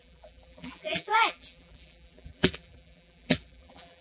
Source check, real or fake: fake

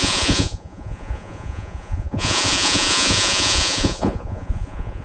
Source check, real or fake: fake